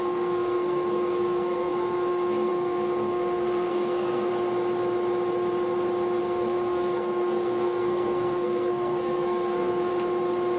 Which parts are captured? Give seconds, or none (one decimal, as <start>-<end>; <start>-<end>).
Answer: 4.3-6.2; 9.9-10.6